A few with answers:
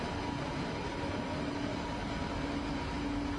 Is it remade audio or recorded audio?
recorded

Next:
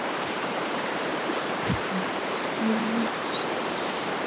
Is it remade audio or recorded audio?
remade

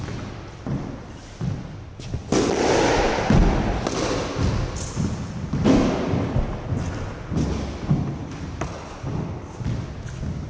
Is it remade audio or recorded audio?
recorded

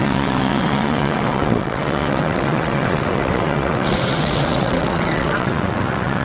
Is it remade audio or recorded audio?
remade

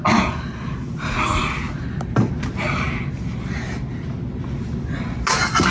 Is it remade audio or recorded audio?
recorded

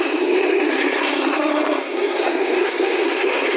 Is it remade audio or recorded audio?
remade